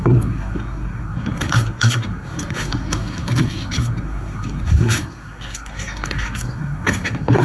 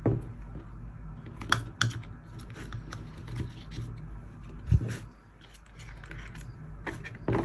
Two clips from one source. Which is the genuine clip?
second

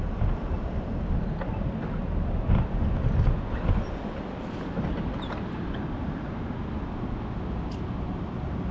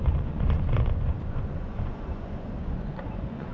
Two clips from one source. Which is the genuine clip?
first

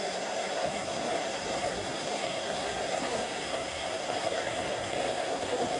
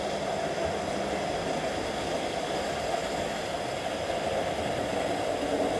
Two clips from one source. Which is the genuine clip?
second